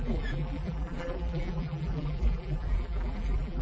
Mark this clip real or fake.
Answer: fake